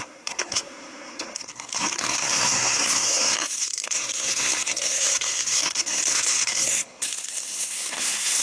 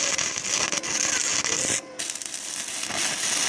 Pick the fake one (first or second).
first